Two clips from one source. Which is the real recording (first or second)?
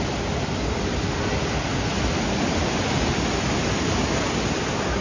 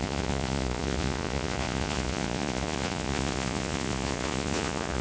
first